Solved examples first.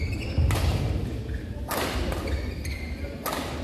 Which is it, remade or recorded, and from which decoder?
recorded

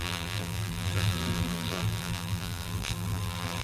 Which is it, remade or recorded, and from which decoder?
remade, vocoder, BigVGAN v2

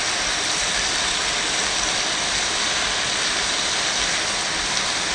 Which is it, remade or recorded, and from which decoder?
recorded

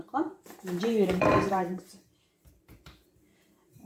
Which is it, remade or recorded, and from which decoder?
remade, vocoder, BigVGAN v2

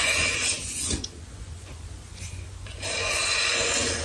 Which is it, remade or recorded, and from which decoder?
remade, vocoder, Vocos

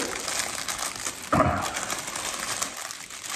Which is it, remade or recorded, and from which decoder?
recorded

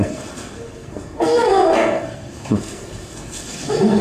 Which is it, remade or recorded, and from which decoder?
remade, codec, SNAC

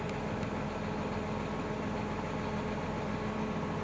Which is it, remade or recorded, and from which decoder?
recorded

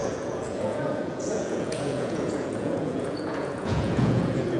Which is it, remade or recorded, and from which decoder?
remade, vocoder, Vocos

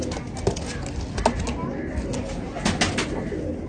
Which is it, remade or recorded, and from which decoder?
recorded